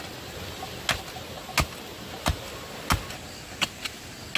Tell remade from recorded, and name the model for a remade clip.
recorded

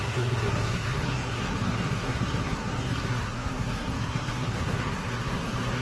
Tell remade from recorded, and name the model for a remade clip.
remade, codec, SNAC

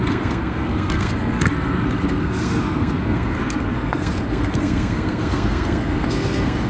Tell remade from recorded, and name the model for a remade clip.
remade, codec, SNAC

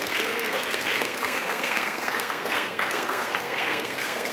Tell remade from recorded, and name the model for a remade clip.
remade, codec, SNAC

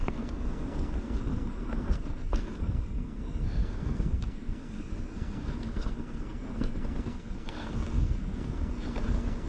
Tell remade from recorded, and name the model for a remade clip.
remade, codec, SNAC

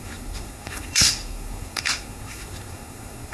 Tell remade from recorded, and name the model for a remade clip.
remade, codec, SNAC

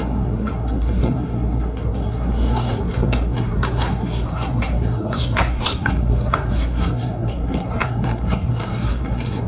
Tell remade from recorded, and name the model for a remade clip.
remade, codec, SNAC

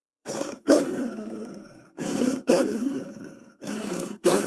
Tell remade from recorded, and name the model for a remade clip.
remade, codec, SNAC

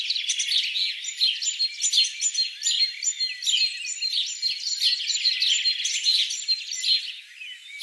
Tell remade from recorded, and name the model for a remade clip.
recorded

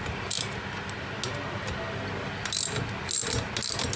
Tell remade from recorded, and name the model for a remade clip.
recorded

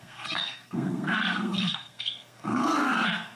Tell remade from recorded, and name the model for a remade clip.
remade, codec, SNAC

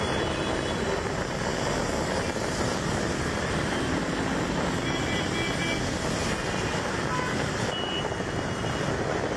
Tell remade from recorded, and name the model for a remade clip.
recorded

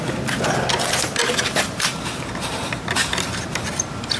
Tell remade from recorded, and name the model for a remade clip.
recorded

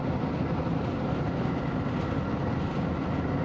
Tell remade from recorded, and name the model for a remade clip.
recorded